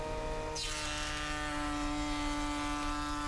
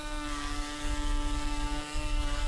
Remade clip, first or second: second